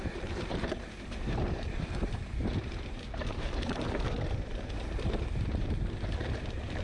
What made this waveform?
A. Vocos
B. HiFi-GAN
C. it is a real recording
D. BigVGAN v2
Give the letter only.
D